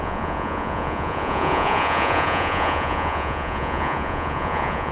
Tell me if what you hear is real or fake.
fake